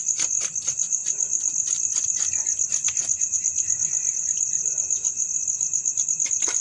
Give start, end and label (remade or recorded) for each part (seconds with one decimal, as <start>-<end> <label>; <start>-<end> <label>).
0.0-6.6 recorded